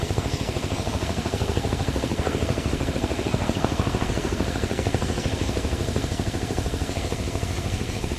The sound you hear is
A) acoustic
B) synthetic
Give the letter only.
B